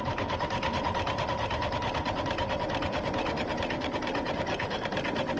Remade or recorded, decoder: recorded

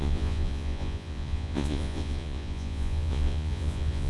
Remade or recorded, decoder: remade, vocoder, Vocos